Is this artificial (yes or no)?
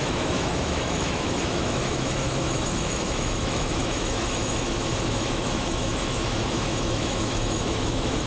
yes